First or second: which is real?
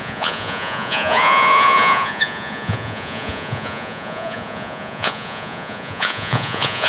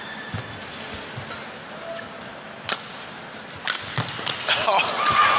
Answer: second